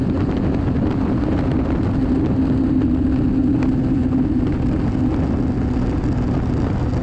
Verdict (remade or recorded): recorded